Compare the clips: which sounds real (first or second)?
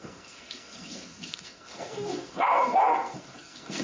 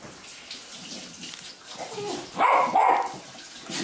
second